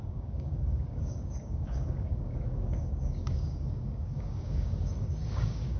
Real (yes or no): no